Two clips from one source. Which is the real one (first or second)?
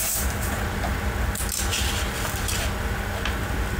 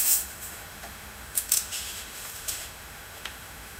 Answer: first